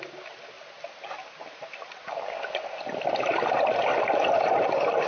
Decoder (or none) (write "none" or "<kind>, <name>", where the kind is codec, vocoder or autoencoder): none